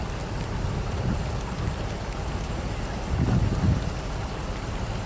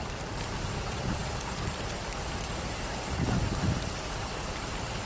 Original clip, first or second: first